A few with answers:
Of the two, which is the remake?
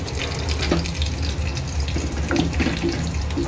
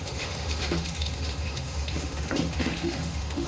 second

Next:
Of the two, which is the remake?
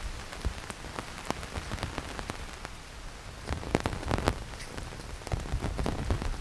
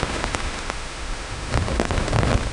second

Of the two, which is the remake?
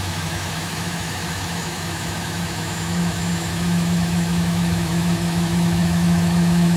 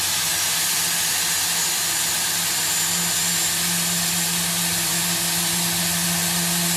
first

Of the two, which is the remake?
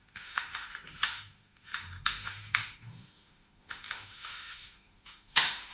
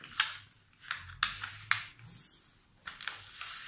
first